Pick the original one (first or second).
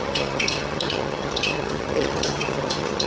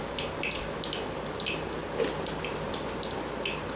second